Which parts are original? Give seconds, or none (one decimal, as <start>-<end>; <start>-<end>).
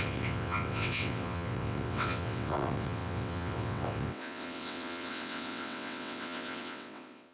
none